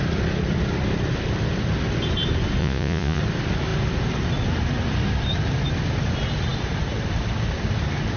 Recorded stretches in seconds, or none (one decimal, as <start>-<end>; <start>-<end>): 0.0-2.6; 3.2-8.2